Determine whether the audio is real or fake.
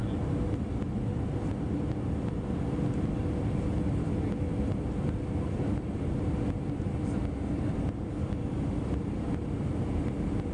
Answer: real